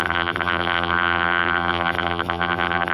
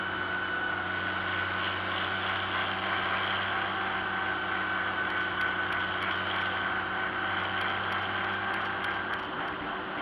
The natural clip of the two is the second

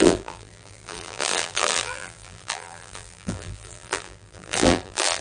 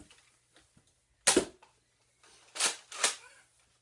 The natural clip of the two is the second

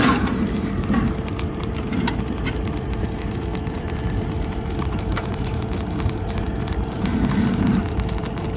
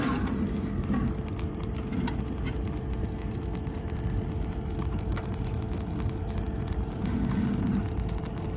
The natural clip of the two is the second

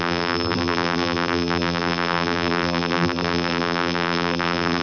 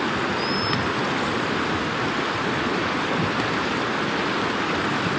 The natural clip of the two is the second